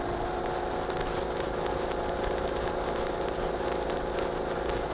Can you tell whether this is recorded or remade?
recorded